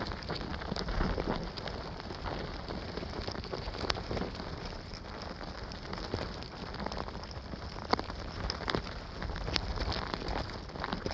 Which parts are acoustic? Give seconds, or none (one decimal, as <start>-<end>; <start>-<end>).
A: 0.0-11.1